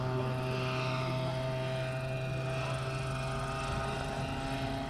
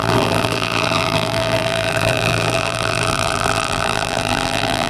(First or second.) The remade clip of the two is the second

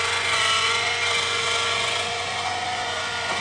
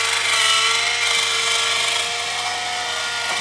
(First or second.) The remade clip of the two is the first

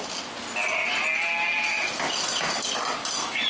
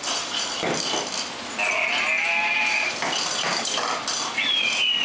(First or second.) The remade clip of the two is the second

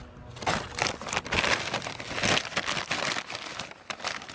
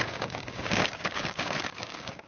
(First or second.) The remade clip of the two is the second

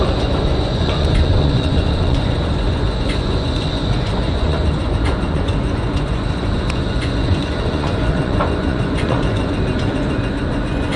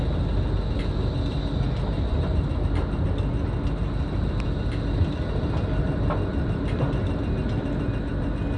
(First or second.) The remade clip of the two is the first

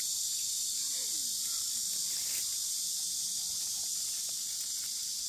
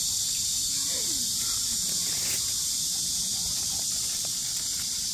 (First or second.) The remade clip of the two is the second